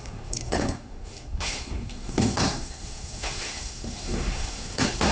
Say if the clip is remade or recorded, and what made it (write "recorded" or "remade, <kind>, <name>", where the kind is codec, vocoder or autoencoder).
remade, codec, SNAC